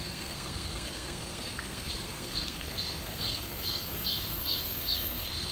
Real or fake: fake